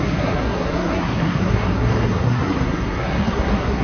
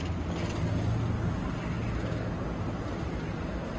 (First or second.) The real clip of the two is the second